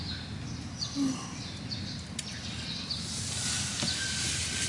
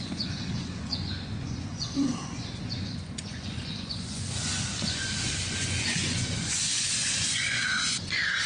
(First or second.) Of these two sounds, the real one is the first